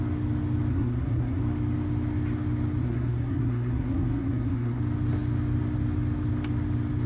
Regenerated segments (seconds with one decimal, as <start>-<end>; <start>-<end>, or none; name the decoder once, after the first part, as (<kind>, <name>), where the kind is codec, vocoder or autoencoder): 0.7-1.4 (codec, SNAC); 2.8-4.8